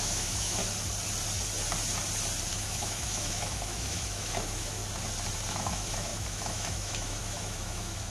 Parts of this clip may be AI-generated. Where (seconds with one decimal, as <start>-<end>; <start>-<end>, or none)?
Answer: 0.0-0.6; 2.5-4.8; 5.5-8.1